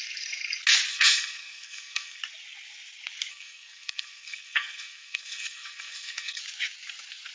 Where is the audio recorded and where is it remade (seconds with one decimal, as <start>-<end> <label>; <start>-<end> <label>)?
0.0-0.9 recorded; 0.9-2.2 remade; 2.2-3.3 recorded; 3.3-6.4 remade; 6.4-7.3 recorded